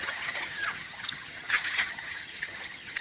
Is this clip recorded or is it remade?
remade